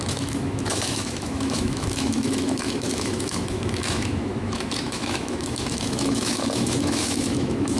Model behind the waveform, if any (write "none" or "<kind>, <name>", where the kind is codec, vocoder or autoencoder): autoencoder, DAC-VAE